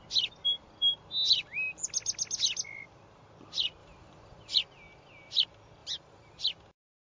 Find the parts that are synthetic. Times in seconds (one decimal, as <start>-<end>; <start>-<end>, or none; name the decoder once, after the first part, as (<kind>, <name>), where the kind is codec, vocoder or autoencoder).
3.8-4.6 (vocoder, BigVGAN v2); 5.8-6.5